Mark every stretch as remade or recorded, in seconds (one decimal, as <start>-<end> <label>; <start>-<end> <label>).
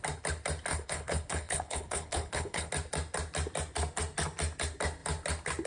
0.0-0.7 recorded; 0.7-2.7 remade; 2.7-5.7 recorded